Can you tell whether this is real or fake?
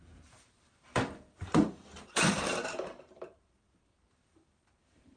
fake